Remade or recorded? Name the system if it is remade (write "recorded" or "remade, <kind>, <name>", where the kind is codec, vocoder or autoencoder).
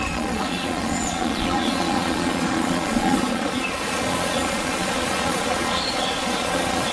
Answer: remade, vocoder, Vocos